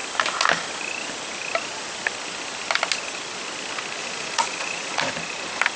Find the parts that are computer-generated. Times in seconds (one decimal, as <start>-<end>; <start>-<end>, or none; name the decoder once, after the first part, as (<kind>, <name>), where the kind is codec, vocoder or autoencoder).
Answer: 4.0-5.1 (vocoder, Vocos)